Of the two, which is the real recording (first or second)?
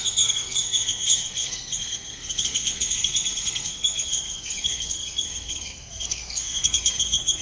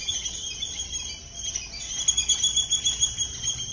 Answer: second